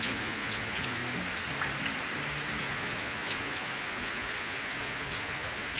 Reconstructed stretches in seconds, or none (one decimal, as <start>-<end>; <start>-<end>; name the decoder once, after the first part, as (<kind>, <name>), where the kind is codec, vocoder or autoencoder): 0.0-1.0 (vocoder, Vocos); 2.6-5.8